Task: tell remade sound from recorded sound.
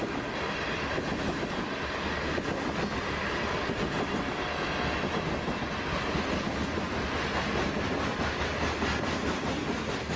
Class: recorded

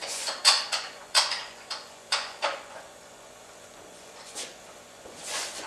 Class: remade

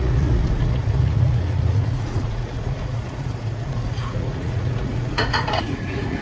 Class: remade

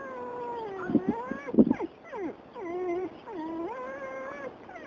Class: recorded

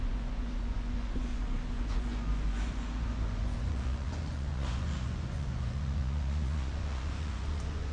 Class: remade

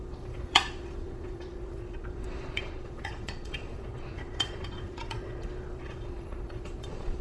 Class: remade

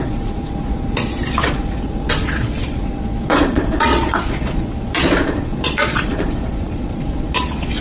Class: remade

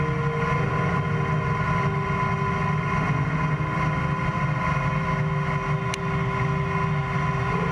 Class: recorded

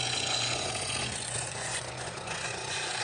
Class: remade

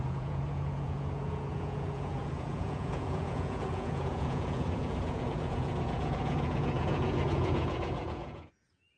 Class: remade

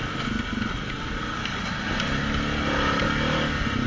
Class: recorded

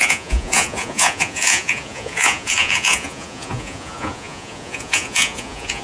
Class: remade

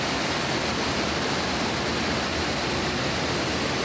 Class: recorded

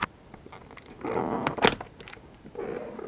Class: recorded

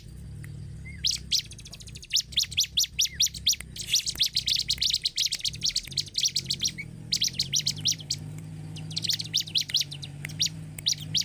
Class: recorded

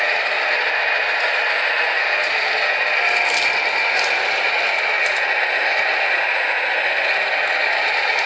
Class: recorded